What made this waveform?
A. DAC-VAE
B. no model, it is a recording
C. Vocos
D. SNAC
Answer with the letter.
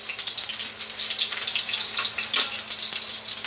B